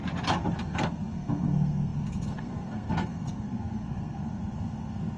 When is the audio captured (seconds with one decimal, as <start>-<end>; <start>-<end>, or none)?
0.0-0.6